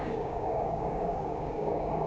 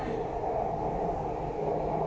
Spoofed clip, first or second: first